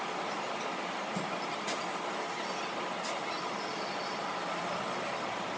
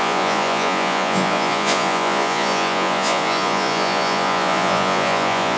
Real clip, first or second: first